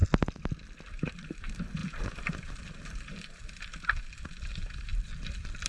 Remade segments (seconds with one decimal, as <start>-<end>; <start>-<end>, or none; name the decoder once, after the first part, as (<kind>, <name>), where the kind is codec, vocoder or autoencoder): 0.9-5.7 (vocoder, BigVGAN v2)